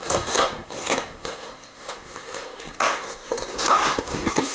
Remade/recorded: remade